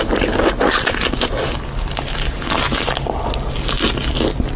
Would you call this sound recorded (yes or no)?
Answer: yes